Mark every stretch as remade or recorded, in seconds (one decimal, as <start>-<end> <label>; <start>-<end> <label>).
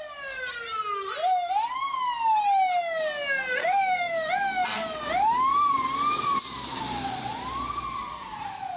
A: 0.0-3.6 recorded; 3.6-4.3 remade; 4.3-8.8 recorded